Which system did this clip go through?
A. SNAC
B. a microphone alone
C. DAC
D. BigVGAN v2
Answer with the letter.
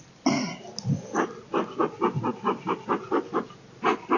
B